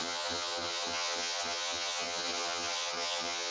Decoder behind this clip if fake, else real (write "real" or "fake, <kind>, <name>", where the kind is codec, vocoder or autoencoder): fake, vocoder, HiFi-GAN